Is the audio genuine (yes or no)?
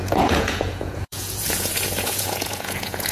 no